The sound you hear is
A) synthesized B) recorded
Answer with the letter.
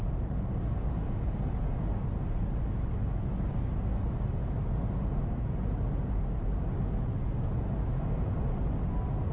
B